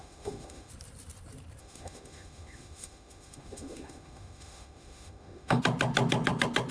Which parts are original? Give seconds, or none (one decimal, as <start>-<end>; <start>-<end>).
0.7-1.6; 5.6-6.7